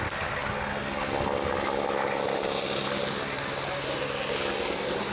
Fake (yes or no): no